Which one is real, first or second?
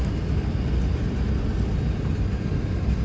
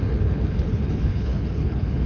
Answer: first